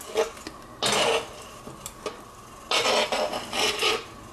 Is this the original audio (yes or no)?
yes